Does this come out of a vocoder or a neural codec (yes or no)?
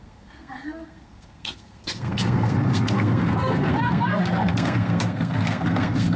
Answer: yes